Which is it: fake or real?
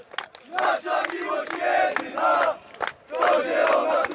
real